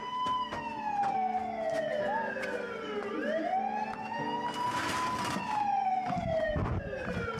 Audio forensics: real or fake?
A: real